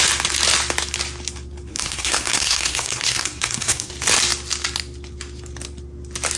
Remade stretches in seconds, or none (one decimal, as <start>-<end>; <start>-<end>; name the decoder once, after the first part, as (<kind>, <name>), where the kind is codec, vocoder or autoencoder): 1.7-3.9 (codec, SNAC)